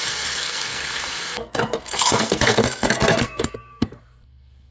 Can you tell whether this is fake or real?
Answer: fake